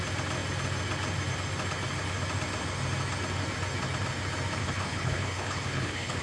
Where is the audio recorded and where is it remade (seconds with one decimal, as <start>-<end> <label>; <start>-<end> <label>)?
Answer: 0.0-4.6 recorded; 4.6-6.2 remade